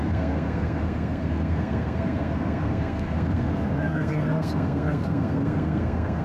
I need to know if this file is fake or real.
fake